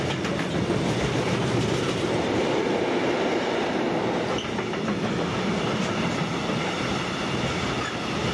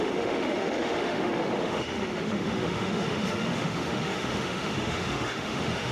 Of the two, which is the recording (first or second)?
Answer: first